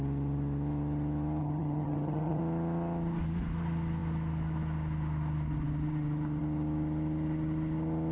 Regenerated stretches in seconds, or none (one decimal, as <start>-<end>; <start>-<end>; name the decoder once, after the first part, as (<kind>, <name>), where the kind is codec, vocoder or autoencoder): 1.4-2.4 (vocoder, HiFi-GAN)